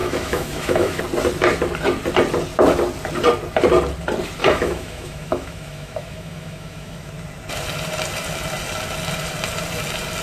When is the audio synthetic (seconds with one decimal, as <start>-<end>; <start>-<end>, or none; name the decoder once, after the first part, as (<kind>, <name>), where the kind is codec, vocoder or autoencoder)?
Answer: 0.0-1.0 (autoencoder, DAC-VAE); 4.4-7.1